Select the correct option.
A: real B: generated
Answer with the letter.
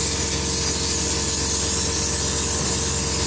A